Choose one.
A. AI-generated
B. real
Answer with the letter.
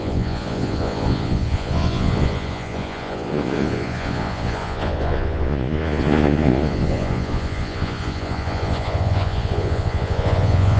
A